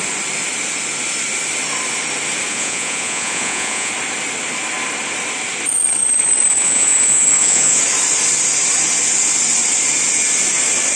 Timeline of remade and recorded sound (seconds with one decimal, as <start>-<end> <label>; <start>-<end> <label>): 0.0-2.5 recorded; 2.5-3.9 remade; 3.9-6.5 recorded; 6.5-7.8 remade; 7.8-11.0 recorded